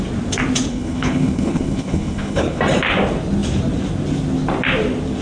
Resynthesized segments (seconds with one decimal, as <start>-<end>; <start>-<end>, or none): 0.7-2.6